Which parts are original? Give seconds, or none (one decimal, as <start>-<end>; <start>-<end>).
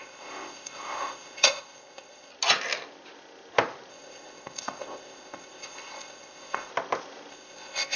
2.3-3.9; 6.7-7.3